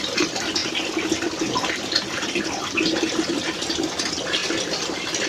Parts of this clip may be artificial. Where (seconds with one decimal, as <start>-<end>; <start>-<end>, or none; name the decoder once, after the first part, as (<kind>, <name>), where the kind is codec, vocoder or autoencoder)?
4.4-5.3 (vocoder, BigVGAN v2)